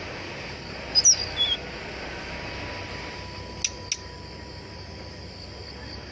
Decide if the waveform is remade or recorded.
recorded